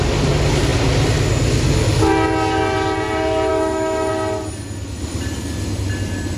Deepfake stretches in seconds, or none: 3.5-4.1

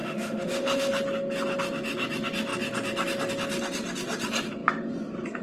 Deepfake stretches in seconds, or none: 0.0-0.9

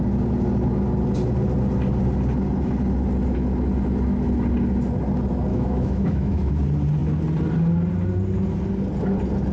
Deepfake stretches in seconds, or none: 5.5-6.5

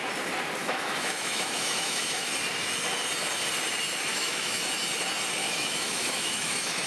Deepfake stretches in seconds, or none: 0.6-2.3; 4.1-4.6; 5.4-6.9

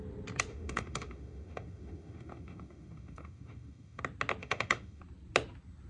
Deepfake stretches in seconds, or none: 0.5-4.0; 4.4-5.0